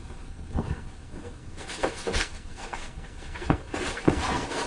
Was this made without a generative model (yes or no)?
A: no